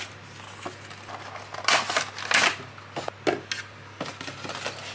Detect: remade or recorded recorded